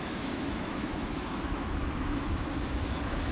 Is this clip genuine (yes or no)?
no